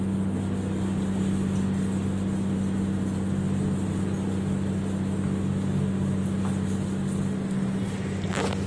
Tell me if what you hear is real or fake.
real